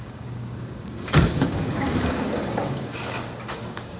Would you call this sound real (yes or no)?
no